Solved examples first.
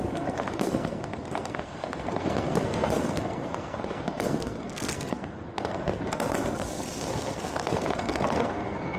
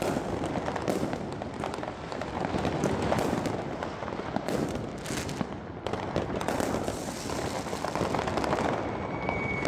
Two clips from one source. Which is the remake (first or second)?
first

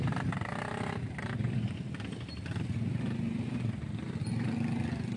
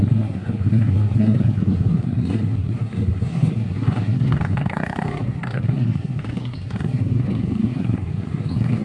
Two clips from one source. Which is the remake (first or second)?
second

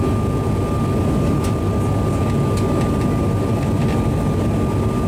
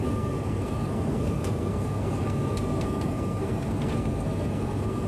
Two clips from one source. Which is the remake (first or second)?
second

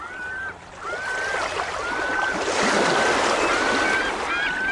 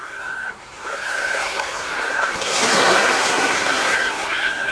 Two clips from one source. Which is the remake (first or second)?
second